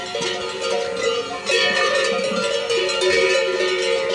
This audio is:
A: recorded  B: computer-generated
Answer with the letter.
A